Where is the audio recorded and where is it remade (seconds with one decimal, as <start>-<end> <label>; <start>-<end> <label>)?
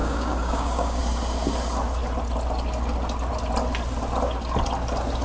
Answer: 0.0-1.0 remade; 1.0-5.2 recorded